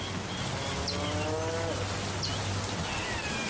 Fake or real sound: real